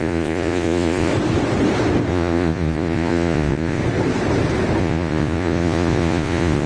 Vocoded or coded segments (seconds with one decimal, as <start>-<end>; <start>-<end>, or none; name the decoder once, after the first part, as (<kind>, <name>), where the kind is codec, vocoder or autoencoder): 0.0-1.1 (vocoder, Vocos); 2.1-3.8; 4.8-6.7